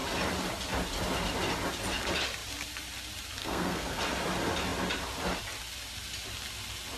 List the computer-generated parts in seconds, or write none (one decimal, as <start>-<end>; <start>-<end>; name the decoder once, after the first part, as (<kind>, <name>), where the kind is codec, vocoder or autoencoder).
3.4-4.0 (codec, SNAC)